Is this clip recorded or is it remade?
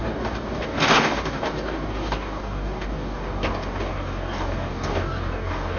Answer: remade